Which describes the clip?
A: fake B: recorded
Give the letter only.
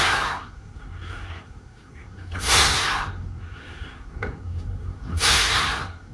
A